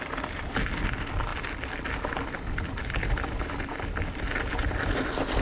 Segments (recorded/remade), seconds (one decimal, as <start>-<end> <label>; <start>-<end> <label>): 0.0-5.4 recorded